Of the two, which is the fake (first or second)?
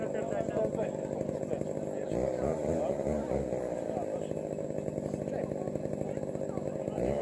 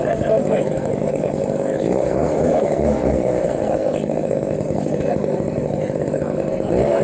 second